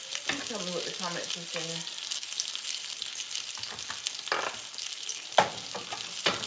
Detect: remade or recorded recorded